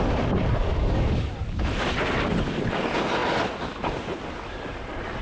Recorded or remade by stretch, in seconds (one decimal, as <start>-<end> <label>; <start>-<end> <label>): 0.0-0.6 recorded; 0.6-1.3 remade; 1.3-5.2 recorded